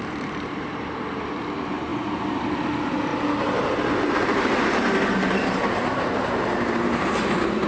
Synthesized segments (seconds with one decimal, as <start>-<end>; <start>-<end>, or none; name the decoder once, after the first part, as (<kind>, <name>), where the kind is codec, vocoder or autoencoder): 0.0-1.9 (vocoder, BigVGAN v2); 2.4-3.1; 3.9-4.8; 5.3-7.7